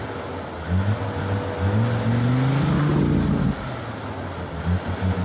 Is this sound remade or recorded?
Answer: recorded